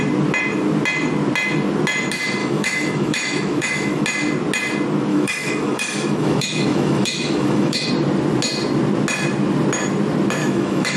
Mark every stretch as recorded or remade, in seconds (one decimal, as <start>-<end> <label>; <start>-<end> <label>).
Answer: 0.0-2.4 recorded; 2.4-4.0 remade; 4.0-5.1 recorded; 5.1-7.9 remade; 7.9-10.4 recorded; 10.4-11.0 remade

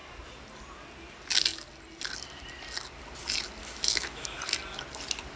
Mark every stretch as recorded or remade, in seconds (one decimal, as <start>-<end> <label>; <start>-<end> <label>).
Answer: 0.0-3.6 recorded; 3.6-4.4 remade; 4.4-5.4 recorded

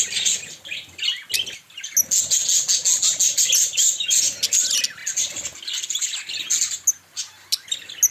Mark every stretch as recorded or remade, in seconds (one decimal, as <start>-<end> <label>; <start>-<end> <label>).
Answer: 0.0-8.1 recorded

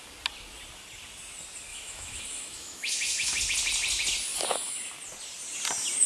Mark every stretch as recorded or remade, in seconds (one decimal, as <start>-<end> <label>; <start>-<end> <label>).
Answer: 0.0-1.7 recorded; 1.7-3.4 remade; 3.4-4.3 recorded; 4.3-4.9 remade; 4.9-6.1 recorded

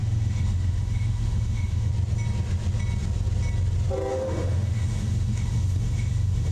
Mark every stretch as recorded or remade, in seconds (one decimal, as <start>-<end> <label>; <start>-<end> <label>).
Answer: 0.0-1.9 remade; 1.9-4.1 recorded; 4.1-6.5 remade

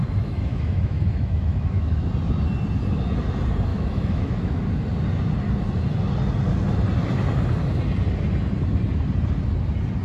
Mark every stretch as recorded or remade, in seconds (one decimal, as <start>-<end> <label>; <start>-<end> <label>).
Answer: 0.0-2.0 remade; 2.0-3.7 recorded; 3.7-4.6 remade; 4.6-10.0 recorded

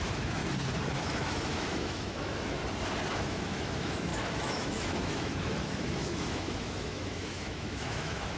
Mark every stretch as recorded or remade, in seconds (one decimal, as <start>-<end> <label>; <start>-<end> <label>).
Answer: 0.0-0.4 remade; 0.4-1.0 recorded; 1.0-2.6 remade; 2.6-3.1 recorded; 3.1-8.4 remade